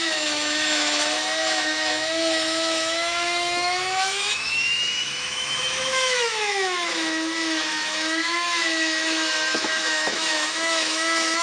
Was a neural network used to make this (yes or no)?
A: yes